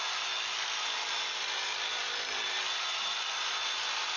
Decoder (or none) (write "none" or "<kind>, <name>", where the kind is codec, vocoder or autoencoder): none